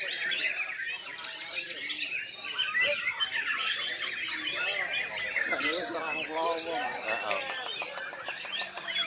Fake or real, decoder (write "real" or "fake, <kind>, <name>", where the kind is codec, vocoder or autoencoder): real